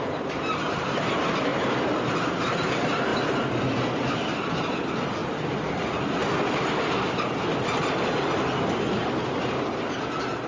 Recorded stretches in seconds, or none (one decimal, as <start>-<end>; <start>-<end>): 1.5-2.1; 5.2-5.7; 6.2-8.9